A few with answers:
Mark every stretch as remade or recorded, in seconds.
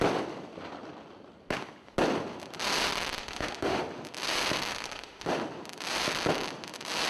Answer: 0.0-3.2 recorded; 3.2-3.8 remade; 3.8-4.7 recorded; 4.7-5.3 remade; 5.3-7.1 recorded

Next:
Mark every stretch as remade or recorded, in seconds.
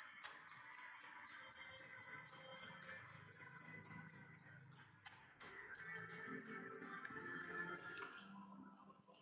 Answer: 0.0-5.2 recorded; 5.2-5.8 remade; 5.8-9.2 recorded